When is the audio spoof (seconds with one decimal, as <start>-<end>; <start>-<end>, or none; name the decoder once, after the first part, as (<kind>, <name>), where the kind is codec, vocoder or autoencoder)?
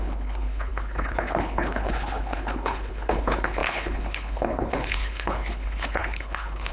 0.0-6.7 (codec, HILCodec)